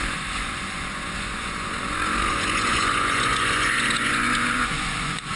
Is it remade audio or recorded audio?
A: remade